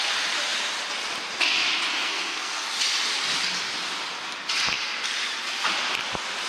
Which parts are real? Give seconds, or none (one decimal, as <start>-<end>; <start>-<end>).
0.0-1.9; 2.7-6.5